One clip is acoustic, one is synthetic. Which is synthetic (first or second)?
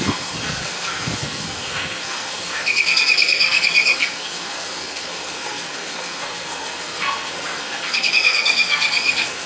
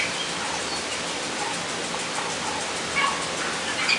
first